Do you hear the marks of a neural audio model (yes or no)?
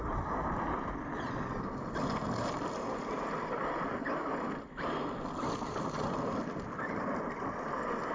no